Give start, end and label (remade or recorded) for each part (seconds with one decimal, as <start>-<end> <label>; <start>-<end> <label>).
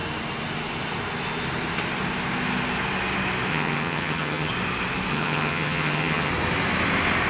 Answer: 0.0-3.5 recorded; 3.5-4.5 remade; 4.5-5.1 recorded; 5.1-6.3 remade; 6.3-7.3 recorded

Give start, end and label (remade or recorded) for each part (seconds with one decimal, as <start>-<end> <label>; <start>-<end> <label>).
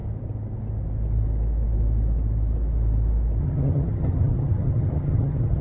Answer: 0.0-3.4 recorded; 3.4-5.6 remade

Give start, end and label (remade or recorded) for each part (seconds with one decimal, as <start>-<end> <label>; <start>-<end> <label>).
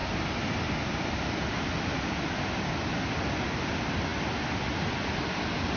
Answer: 0.0-5.8 recorded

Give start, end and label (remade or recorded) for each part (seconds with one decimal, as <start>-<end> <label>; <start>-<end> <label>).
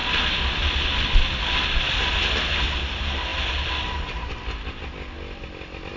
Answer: 0.0-6.0 recorded